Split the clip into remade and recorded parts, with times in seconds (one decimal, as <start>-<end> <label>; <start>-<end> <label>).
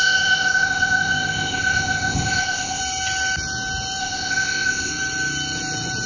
0.0-2.8 remade; 2.8-4.0 recorded; 4.0-4.9 remade; 4.9-6.1 recorded